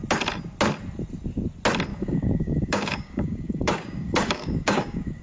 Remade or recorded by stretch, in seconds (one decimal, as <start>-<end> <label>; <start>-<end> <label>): 0.0-1.9 recorded; 1.9-5.2 remade